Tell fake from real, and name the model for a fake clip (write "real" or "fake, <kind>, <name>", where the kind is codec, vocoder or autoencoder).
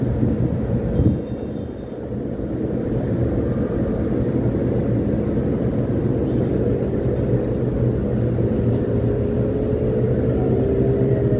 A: real